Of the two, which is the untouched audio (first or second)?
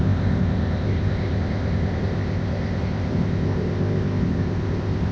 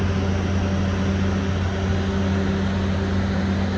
second